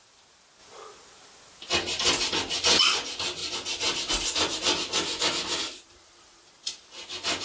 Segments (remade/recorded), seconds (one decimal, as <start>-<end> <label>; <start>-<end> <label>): 0.0-7.4 recorded